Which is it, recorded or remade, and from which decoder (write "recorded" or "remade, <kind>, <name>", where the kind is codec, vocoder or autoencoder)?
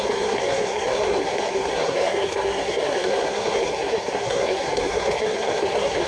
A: remade, codec, SNAC